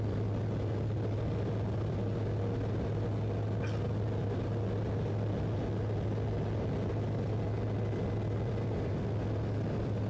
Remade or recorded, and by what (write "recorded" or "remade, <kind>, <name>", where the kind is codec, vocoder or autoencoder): recorded